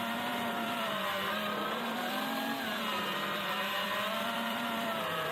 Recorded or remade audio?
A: remade